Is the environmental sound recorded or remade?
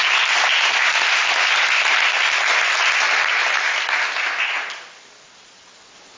recorded